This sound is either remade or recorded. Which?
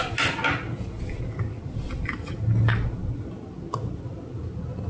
recorded